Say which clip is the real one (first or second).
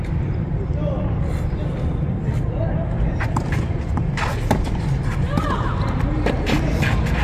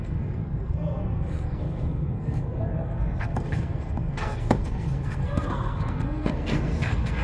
first